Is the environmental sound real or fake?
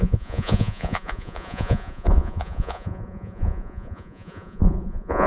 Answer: fake